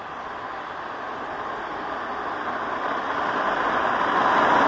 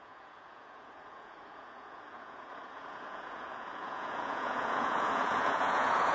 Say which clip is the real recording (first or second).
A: first